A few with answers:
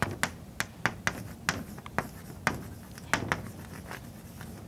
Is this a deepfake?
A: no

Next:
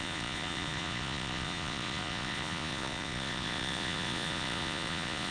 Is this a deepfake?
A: yes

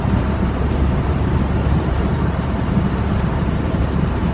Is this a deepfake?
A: yes